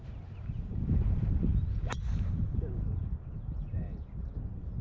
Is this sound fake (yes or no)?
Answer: yes